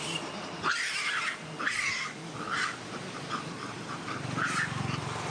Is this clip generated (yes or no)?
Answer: yes